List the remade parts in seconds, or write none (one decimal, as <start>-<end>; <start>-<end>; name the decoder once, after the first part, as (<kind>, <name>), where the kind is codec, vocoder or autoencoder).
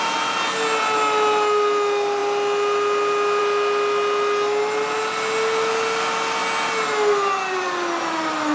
none